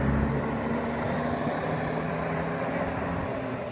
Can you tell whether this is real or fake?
real